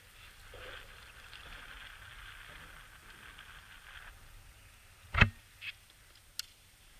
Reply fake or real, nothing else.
real